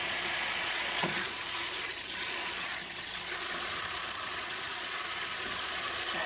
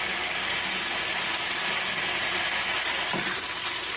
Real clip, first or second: second